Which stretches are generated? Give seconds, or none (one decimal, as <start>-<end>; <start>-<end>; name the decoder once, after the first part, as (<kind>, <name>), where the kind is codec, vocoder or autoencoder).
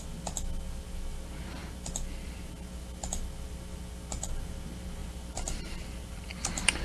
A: 5.0-6.8 (vocoder, BigVGAN v2)